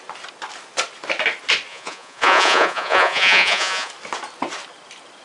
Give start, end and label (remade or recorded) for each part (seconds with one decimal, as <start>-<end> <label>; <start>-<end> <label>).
0.0-1.7 recorded; 1.7-3.9 remade; 3.9-5.2 recorded